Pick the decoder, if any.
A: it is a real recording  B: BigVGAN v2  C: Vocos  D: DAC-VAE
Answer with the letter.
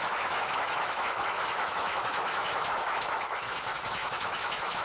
D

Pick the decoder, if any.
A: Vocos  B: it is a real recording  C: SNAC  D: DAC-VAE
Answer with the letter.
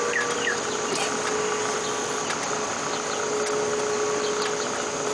B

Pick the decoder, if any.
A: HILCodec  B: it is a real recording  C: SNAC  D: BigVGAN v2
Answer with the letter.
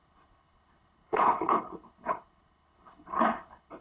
A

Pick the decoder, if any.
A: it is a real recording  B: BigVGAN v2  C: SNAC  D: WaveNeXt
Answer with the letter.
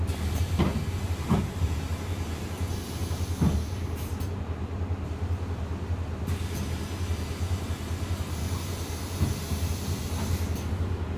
A